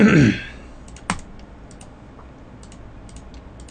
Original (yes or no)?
yes